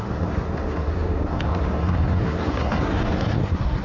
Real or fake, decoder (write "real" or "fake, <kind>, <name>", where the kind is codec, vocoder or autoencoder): fake, codec, SNAC